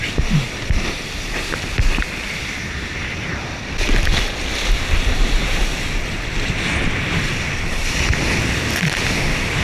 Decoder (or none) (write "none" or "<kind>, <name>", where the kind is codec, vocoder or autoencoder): none